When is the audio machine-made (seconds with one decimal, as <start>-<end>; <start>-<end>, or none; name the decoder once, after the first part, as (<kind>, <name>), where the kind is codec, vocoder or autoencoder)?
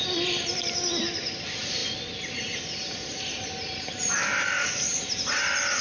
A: none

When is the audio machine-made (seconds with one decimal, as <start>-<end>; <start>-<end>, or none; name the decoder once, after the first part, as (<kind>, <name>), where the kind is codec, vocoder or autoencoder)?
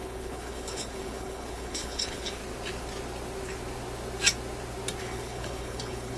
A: 0.0-2.4 (codec, HILCodec); 5.0-6.2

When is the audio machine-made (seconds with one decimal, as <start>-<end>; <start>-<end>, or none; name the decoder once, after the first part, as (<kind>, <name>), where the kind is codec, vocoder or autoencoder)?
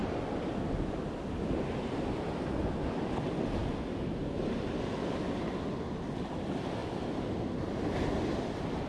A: none